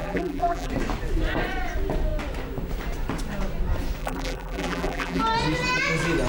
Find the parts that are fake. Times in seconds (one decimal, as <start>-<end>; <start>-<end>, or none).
0.0-0.7; 4.0-5.2